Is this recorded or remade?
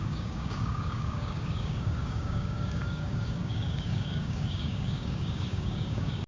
remade